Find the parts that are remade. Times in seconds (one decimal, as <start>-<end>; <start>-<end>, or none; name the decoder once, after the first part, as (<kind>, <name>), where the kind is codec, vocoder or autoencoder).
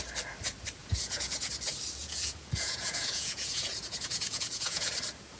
0.8-1.5 (vocoder, Vocos); 2.0-4.9